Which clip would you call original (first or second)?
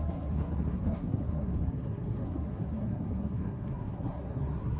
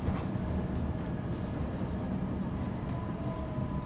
second